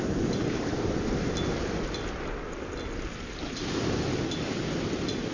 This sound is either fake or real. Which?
real